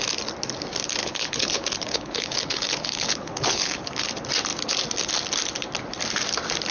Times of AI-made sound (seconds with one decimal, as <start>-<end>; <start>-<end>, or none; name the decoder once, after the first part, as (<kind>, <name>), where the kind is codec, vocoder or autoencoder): 1.0-4.0 (codec, HILCodec)